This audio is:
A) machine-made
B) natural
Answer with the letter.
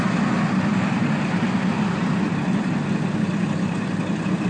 B